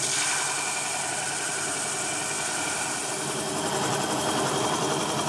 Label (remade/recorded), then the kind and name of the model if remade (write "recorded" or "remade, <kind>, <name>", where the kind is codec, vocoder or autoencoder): remade, vocoder, BigVGAN v2